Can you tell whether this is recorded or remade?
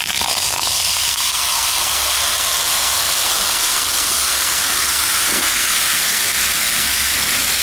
remade